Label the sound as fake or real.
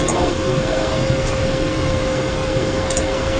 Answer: fake